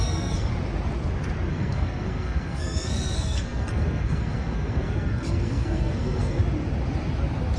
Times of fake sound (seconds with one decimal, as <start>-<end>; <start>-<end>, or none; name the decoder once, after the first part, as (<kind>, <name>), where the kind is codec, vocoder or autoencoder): 0.0-0.5 (codec, SNAC); 1.5-6.4